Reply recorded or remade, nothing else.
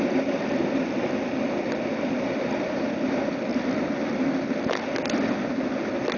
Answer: recorded